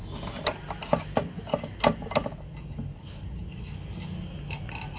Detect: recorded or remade recorded